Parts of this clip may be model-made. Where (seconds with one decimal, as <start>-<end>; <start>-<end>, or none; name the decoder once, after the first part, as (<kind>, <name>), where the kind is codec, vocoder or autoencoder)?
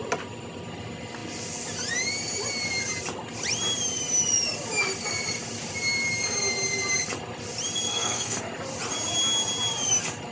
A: 7.9-8.4 (codec, SNAC)